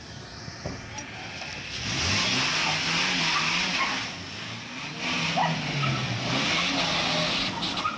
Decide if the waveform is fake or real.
real